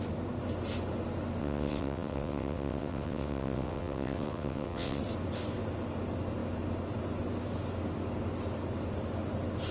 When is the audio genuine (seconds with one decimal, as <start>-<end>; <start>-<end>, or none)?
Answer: 0.0-1.4; 5.0-9.7